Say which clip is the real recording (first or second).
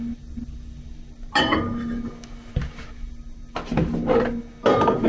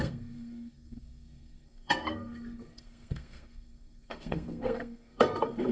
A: first